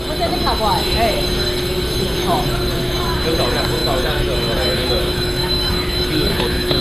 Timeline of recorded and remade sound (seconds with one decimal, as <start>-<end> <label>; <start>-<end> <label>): 0.0-2.2 recorded; 2.2-3.0 remade; 3.0-3.8 recorded; 3.8-6.8 remade